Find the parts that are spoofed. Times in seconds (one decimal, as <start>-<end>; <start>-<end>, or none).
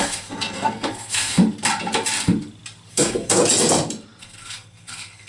0.0-1.4; 2.9-3.4; 4.2-5.3